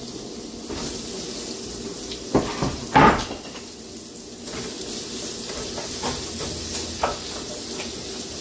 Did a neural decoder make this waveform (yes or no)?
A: no